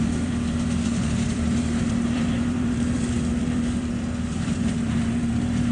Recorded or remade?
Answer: remade